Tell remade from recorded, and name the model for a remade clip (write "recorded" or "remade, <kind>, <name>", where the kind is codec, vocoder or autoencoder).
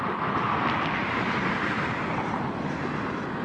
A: recorded